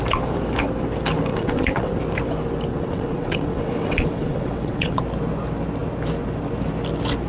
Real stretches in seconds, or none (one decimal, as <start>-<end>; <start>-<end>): 0.0-1.3; 1.9-2.7; 5.0-7.3